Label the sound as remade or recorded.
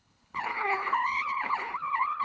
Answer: remade